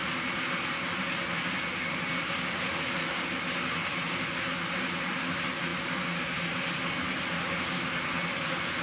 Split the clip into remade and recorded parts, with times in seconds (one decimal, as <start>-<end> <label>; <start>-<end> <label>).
0.0-8.8 recorded